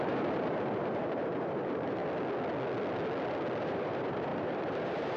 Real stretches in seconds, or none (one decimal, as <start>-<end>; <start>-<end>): 2.0-3.6